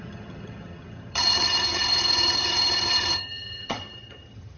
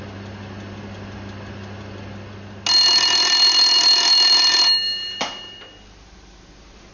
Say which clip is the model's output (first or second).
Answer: first